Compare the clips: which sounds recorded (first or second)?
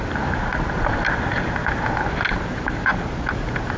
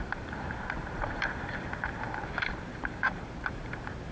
first